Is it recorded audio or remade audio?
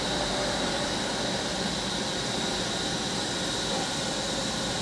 recorded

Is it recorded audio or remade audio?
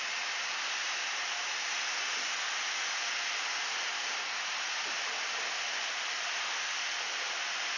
recorded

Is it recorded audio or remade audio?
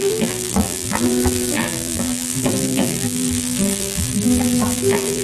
remade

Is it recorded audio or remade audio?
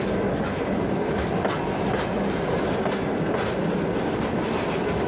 recorded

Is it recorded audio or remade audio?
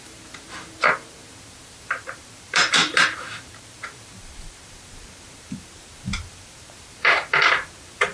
remade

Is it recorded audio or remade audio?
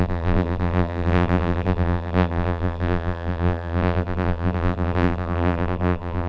remade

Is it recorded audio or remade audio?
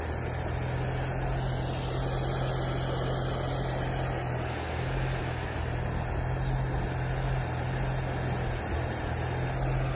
recorded